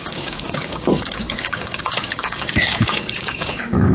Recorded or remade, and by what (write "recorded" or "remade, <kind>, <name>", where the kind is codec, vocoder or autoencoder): remade, codec, DAC